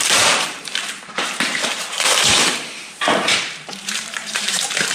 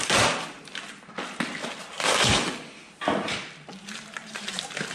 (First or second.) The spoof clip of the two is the first